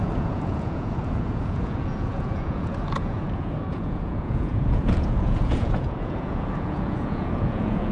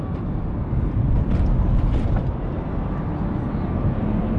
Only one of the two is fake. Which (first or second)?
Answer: first